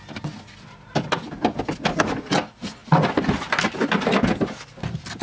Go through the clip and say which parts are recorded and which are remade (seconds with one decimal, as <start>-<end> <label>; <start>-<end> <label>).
0.0-5.2 recorded